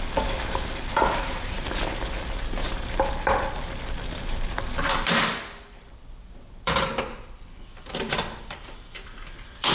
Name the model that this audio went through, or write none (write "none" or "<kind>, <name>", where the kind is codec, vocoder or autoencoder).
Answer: vocoder, BigVGAN v2